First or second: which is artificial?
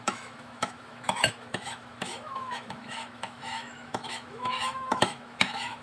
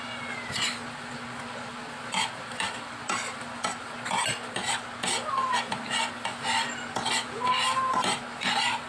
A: first